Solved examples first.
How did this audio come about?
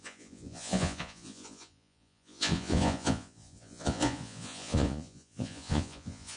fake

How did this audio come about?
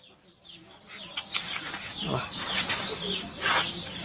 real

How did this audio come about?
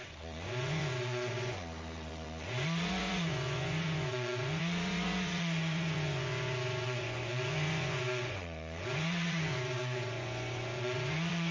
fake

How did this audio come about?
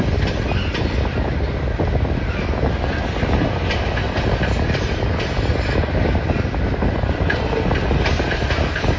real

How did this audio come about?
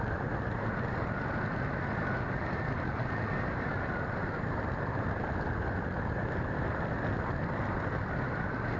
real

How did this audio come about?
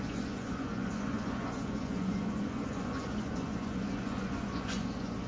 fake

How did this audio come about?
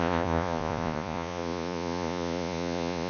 fake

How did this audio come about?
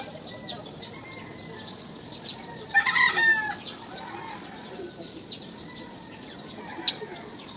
real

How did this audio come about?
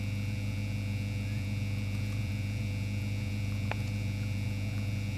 fake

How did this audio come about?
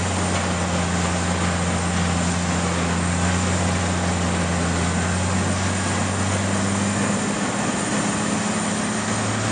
real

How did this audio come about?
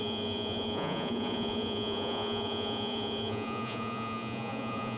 fake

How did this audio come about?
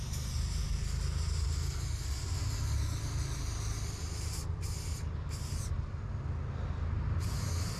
real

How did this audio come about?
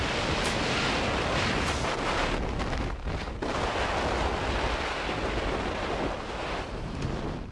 real